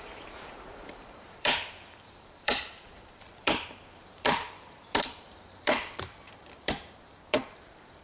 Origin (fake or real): fake